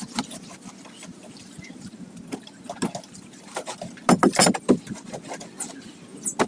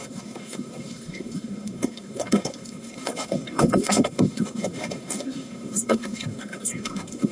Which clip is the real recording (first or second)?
first